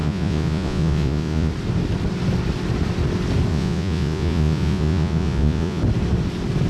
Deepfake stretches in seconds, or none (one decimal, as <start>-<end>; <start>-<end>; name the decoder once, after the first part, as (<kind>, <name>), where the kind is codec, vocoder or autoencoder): 0.0-1.5 (vocoder, Vocos); 3.5-5.8